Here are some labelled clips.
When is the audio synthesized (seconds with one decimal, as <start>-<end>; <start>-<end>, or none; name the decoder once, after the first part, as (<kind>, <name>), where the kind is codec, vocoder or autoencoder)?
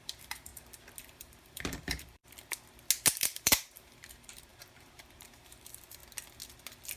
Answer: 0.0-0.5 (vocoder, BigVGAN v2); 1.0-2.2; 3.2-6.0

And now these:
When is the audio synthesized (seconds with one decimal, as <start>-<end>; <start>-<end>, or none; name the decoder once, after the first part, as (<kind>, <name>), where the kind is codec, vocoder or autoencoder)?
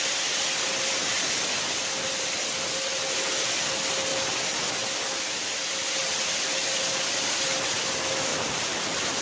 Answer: 8.3-9.2 (vocoder, BigVGAN v2)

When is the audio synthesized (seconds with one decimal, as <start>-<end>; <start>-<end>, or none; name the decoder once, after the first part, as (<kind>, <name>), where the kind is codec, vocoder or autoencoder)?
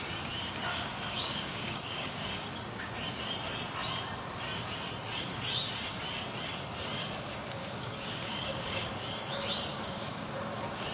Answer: 0.7-2.3 (codec, DAC); 7.6-8.9; 9.7-10.9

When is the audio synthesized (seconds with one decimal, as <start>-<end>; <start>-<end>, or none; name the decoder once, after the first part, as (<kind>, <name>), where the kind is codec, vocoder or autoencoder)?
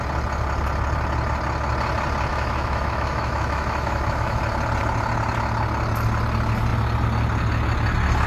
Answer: 2.3-4.4 (autoencoder, DAC-VAE)